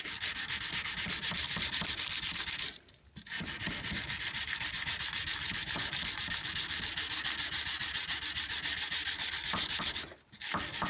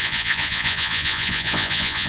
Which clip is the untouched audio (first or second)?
first